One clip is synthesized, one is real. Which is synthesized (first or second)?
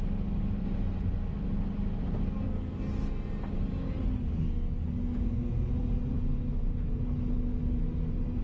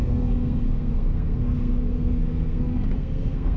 second